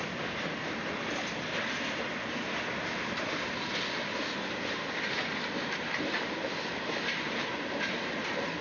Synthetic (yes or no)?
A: no